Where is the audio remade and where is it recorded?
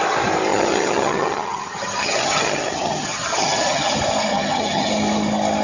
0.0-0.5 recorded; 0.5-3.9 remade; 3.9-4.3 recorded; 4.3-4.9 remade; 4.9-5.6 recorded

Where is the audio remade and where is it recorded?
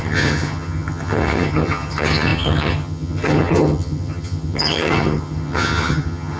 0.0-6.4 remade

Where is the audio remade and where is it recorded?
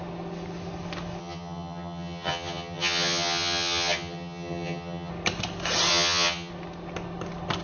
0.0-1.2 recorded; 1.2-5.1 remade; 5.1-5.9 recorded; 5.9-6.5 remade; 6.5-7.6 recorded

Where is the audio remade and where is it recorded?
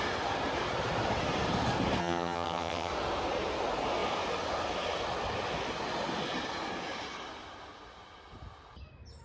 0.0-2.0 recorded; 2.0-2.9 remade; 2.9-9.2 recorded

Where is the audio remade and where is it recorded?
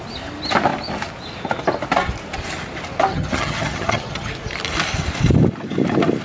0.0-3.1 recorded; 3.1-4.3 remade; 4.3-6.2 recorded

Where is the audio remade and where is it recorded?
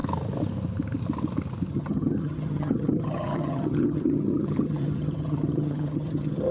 0.0-1.7 recorded; 1.7-6.5 remade